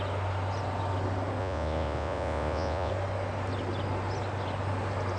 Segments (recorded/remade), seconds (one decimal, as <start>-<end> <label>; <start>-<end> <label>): 0.0-1.4 recorded; 1.4-2.9 remade; 2.9-5.2 recorded